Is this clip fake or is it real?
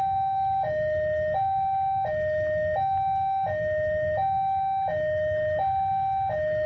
real